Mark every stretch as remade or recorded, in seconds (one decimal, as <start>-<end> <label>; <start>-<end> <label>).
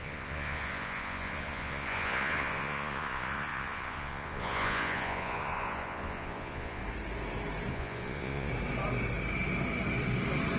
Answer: 0.0-6.8 remade; 6.8-7.7 recorded; 7.7-8.5 remade; 8.5-10.6 recorded